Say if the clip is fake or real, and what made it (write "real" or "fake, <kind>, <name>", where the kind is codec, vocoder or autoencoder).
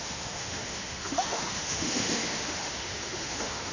fake, autoencoder, DAC-VAE